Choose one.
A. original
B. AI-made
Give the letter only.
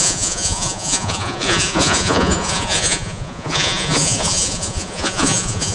B